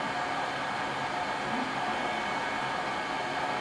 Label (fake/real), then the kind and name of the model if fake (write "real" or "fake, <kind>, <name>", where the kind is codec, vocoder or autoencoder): real